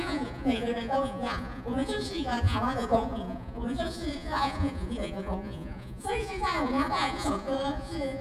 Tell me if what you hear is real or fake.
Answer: fake